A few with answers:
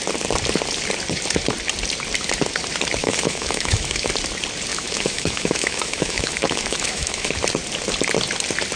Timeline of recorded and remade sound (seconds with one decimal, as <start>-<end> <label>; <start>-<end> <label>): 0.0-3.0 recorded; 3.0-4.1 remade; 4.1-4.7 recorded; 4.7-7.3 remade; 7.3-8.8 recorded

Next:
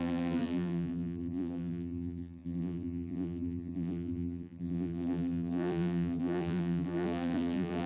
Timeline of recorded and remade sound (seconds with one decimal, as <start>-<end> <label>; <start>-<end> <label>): 0.0-7.9 remade

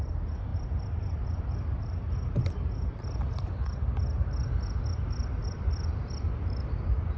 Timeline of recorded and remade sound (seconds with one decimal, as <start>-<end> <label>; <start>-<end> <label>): 0.0-5.4 recorded; 5.4-6.2 remade; 6.2-7.2 recorded

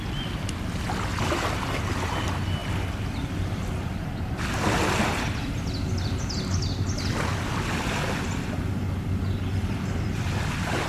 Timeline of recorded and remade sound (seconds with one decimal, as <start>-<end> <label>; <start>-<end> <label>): 0.0-10.9 recorded